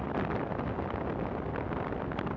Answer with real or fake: real